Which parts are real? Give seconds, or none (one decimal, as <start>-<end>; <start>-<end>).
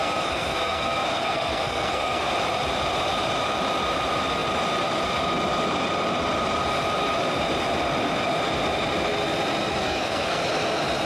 2.3-9.8; 10.4-11.1